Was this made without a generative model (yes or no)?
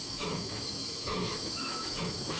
no